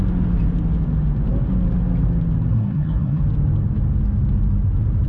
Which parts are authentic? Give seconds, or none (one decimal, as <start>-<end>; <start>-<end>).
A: 0.0-2.5; 3.2-5.1